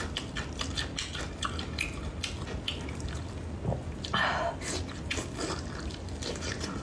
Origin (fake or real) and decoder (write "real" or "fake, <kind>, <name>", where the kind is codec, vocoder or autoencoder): real